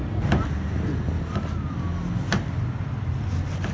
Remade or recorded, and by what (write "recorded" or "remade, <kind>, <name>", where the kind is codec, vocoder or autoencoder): recorded